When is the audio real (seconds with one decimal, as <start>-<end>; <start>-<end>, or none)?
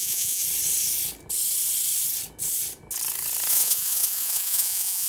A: 0.4-3.5